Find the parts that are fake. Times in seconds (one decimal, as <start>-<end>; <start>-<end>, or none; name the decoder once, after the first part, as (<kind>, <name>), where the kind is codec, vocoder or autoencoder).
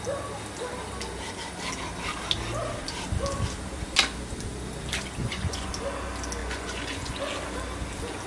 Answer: 5.2-5.7 (vocoder, Vocos); 6.4-7.2